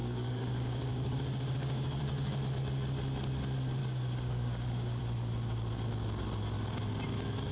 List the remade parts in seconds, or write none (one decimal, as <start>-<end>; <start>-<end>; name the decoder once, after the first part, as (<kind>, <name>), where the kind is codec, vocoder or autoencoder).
0.0-2.3 (codec, DAC); 3.8-5.0